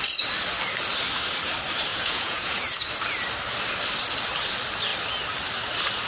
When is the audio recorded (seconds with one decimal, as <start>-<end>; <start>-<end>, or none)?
0.0-1.9; 2.6-6.1